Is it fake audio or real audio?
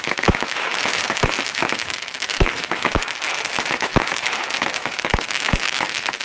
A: fake